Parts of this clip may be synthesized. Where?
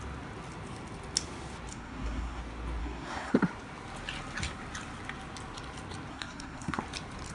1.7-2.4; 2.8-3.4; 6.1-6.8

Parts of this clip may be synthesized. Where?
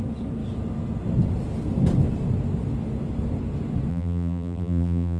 3.9-5.2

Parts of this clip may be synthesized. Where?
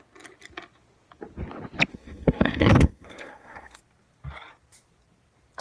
1.9-3.8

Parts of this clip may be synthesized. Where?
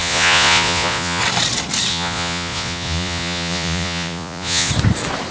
0.0-1.2; 1.9-4.7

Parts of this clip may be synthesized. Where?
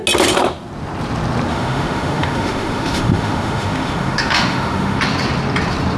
1.5-5.0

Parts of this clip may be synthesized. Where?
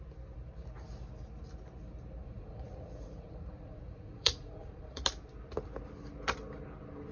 2.2-5.0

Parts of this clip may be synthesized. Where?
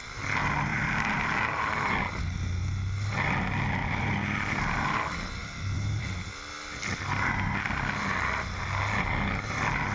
0.7-2.2; 3.8-4.6; 5.4-6.1